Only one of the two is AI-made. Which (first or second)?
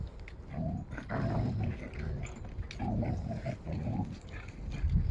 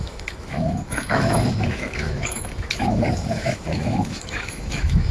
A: second